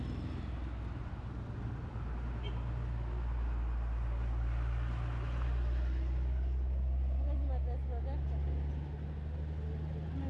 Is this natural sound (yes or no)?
yes